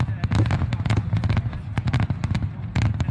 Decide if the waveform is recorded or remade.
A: recorded